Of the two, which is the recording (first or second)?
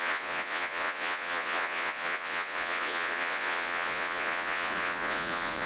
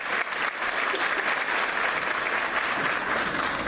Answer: second